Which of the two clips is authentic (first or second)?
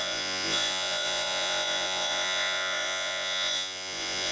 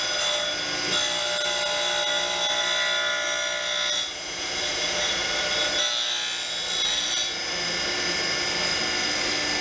second